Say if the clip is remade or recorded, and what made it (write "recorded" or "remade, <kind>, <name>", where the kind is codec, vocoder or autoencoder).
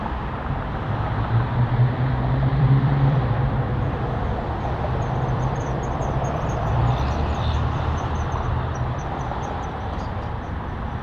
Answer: remade, vocoder, BigVGAN v2